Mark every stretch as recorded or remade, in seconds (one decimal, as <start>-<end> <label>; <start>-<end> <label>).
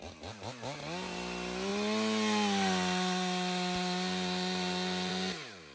0.0-5.7 recorded